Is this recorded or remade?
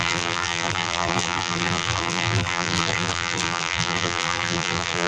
remade